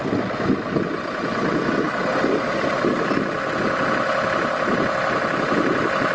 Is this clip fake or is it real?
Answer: real